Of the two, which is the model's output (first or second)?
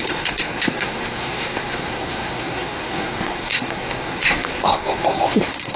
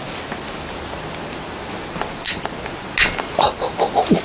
first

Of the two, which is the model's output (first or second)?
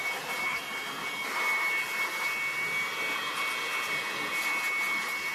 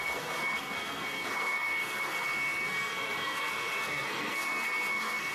second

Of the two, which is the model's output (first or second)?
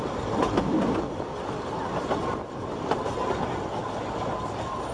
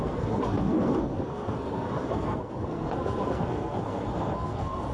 second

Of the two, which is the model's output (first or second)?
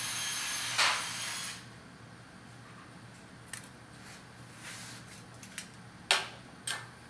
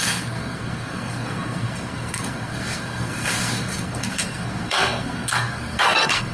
second